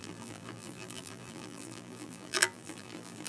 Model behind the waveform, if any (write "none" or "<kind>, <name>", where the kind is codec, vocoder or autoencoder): vocoder, BigVGAN v2